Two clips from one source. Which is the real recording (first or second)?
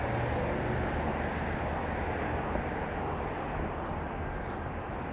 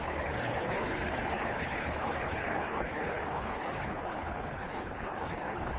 first